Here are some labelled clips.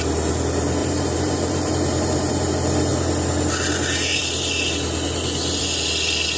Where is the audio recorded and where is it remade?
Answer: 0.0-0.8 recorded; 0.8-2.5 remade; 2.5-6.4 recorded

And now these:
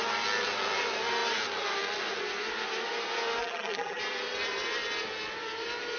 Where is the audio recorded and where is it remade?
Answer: 0.0-3.4 recorded; 3.4-4.0 remade; 4.0-6.0 recorded

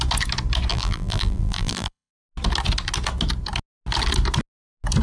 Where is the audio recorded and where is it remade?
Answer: 0.0-0.7 recorded; 0.7-2.1 remade; 2.1-5.0 recorded

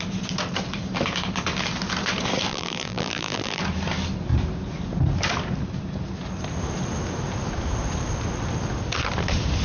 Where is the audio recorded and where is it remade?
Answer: 0.0-2.5 recorded; 2.5-3.6 remade; 3.6-9.6 recorded

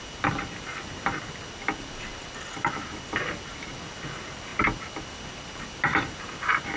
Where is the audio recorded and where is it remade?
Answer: 0.0-6.8 recorded